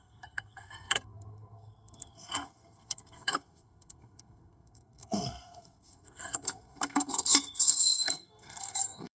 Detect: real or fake fake